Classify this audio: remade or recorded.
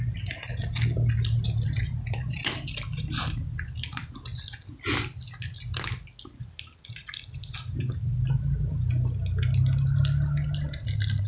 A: recorded